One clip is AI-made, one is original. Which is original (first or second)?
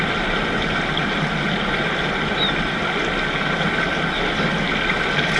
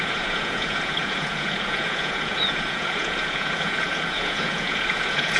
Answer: first